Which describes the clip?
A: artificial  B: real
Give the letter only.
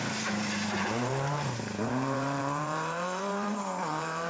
A